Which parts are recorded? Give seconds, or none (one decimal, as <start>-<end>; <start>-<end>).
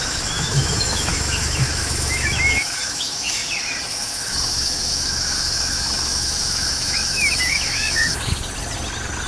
3.4-3.9; 8.4-9.3